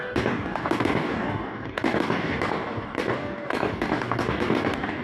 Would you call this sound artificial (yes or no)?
yes